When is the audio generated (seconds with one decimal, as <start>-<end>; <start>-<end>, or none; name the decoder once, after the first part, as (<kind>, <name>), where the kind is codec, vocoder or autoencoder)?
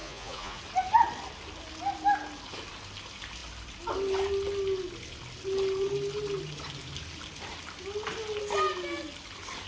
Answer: 0.0-0.6 (vocoder, Vocos)